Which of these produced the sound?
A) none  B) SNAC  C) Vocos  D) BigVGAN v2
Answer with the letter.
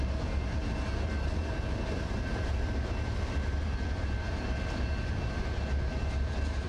A